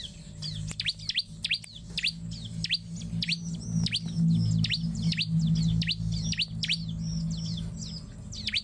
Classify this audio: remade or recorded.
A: recorded